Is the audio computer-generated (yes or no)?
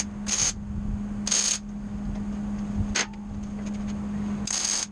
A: no